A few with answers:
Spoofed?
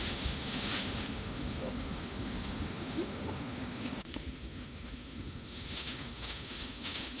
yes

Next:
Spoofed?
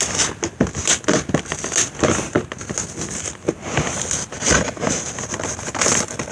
no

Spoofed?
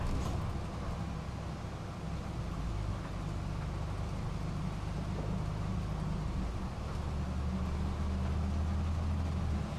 no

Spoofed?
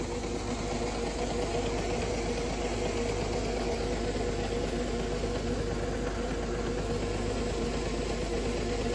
no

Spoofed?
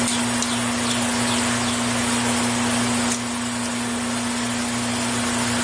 no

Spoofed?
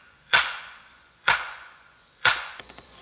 yes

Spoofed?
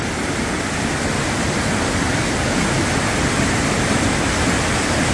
no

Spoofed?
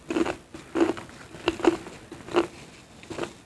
no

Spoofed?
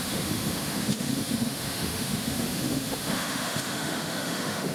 yes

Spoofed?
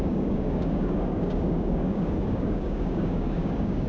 yes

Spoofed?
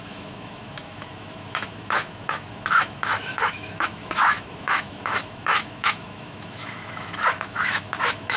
yes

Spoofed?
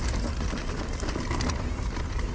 no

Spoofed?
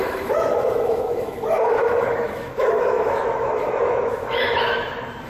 yes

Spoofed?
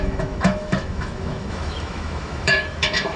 yes